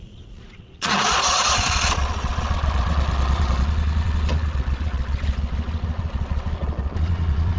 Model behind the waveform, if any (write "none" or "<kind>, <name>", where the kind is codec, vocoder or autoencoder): vocoder, Vocos